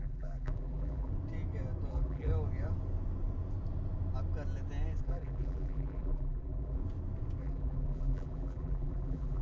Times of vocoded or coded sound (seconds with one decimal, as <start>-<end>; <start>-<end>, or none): 0.0-1.1; 1.9-2.3; 5.0-6.8; 7.4-9.4